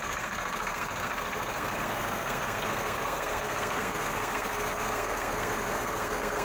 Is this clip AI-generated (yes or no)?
yes